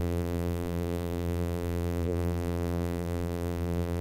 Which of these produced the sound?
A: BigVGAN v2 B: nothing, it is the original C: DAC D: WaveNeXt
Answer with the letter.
A